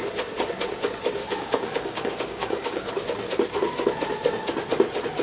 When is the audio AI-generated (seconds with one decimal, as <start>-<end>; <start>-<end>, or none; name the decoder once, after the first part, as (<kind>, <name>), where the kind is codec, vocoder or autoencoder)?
1.2-2.9 (codec, DAC)